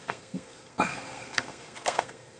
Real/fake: fake